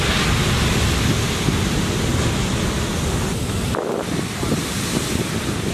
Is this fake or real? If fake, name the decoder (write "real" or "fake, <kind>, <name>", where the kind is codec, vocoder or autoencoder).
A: real